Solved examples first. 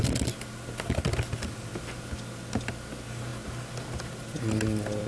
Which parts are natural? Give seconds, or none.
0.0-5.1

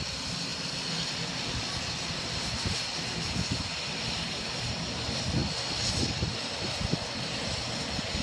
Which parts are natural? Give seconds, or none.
0.0-8.2

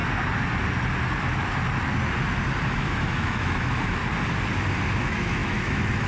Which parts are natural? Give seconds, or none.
0.0-2.7; 4.0-5.0

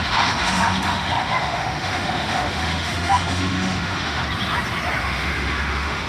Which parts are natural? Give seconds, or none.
4.2-5.0

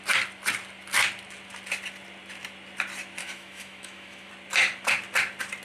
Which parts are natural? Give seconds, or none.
0.0-3.2; 4.3-5.6

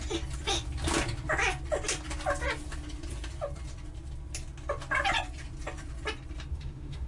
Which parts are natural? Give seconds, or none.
0.0-6.5

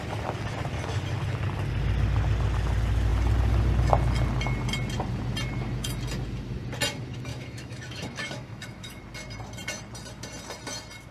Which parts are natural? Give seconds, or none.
0.0-7.3; 9.0-11.1